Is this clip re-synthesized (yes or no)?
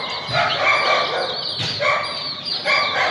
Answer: no